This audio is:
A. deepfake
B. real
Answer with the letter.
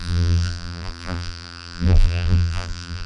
A